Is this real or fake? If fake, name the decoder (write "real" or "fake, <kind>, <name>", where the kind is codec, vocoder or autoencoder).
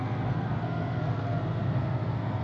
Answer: fake, codec, SNAC